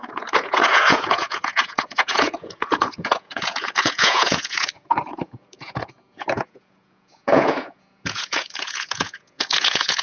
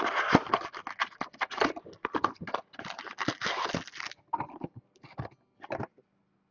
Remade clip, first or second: first